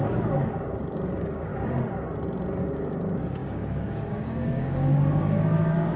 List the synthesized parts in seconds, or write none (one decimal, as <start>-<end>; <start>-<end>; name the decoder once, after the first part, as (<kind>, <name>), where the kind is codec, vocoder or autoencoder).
0.0-1.5 (codec, DAC); 2.6-6.0